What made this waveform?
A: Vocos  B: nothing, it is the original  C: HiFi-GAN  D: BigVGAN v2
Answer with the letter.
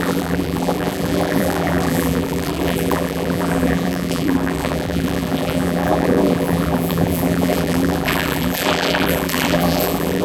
D